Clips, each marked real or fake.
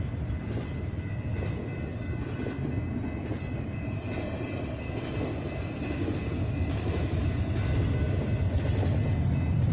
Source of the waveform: real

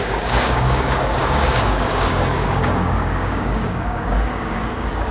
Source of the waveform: fake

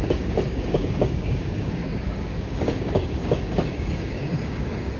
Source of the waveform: fake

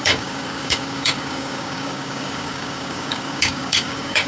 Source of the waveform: fake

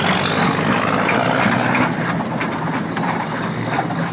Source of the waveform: real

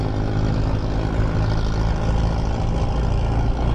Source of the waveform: real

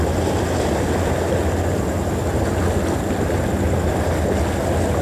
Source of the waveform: real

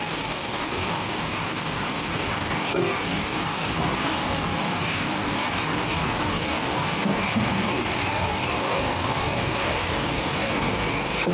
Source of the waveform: fake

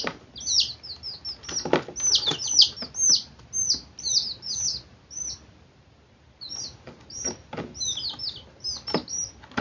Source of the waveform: real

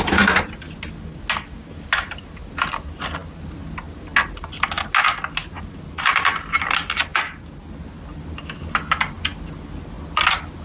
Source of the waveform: real